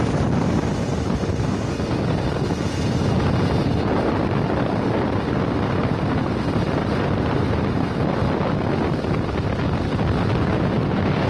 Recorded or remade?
recorded